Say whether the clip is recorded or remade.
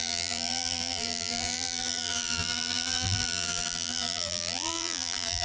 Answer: remade